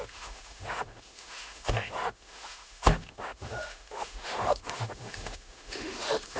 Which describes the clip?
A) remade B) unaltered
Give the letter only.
A